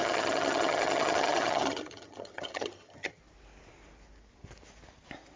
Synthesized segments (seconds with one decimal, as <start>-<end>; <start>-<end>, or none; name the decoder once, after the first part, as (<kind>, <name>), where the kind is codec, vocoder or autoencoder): 0.0-3.2 (vocoder, HiFi-GAN)

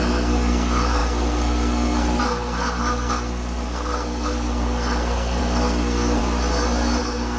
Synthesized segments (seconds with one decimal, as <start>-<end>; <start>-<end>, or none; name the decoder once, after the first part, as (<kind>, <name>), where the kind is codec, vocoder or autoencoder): 0.0-6.2 (codec, SNAC); 7.0-7.4

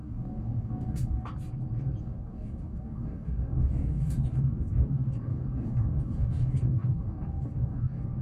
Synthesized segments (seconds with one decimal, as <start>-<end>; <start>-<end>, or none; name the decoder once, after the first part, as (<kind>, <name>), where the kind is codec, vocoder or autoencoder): 0.0-1.3 (codec, DAC); 2.0-8.2